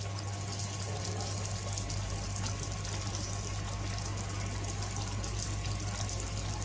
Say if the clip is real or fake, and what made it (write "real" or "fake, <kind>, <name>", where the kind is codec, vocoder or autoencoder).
real